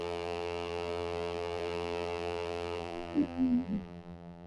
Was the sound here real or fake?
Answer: fake